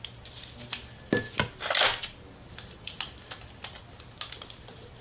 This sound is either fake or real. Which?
real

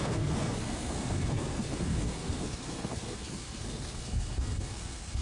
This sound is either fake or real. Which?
fake